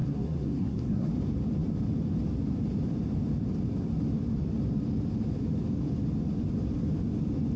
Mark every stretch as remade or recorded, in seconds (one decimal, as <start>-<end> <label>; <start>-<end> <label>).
0.0-1.1 remade; 1.1-7.6 recorded